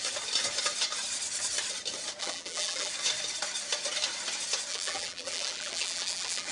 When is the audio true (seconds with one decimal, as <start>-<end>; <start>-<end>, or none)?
0.0-2.2; 2.9-4.7